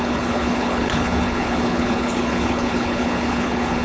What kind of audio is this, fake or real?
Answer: fake